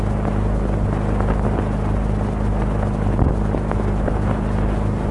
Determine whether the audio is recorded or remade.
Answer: recorded